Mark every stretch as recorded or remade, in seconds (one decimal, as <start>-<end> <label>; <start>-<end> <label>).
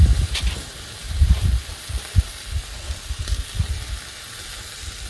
0.0-5.1 recorded